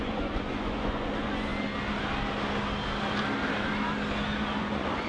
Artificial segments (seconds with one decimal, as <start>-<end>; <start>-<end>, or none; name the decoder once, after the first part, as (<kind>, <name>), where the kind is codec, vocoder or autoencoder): 0.0-1.5 (vocoder, Vocos); 4.6-5.1